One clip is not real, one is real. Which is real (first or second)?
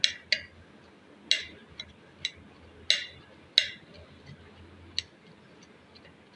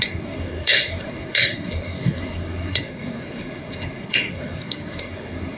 first